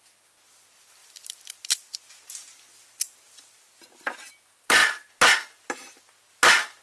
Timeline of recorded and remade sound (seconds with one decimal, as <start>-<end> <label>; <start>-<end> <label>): 0.0-1.0 recorded; 1.0-2.7 remade; 2.7-6.8 recorded